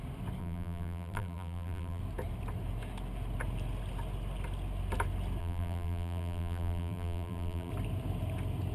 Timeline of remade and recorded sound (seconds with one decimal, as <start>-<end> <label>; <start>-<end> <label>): 0.0-0.4 recorded; 0.4-2.0 remade; 2.0-5.4 recorded; 5.4-7.7 remade; 7.7-8.7 recorded